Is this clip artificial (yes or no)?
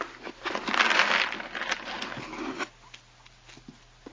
no